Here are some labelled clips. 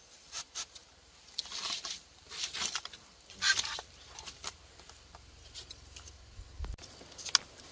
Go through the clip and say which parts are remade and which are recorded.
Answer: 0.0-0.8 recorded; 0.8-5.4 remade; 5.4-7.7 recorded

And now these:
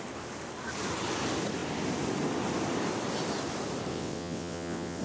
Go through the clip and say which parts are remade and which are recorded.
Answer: 0.0-3.9 recorded; 3.9-5.0 remade

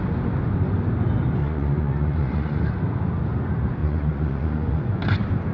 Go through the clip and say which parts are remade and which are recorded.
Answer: 0.0-1.4 recorded; 1.4-2.7 remade; 2.7-3.8 recorded; 3.8-5.0 remade; 5.0-5.5 recorded

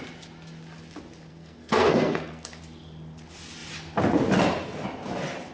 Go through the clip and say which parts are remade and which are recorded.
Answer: 0.0-1.3 recorded; 1.3-2.6 remade; 2.6-5.5 recorded

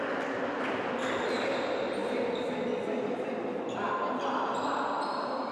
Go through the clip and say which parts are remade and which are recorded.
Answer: 0.0-5.5 recorded

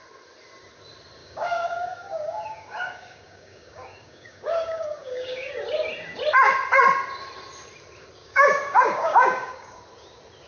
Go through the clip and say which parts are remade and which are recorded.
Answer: 0.0-1.2 recorded; 1.2-5.5 remade; 5.5-8.2 recorded; 8.2-9.8 remade; 9.8-10.5 recorded